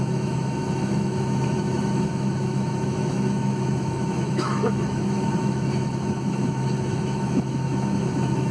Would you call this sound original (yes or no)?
no